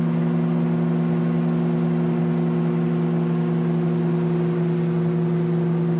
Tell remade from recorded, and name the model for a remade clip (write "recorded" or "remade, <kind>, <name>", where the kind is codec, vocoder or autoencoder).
recorded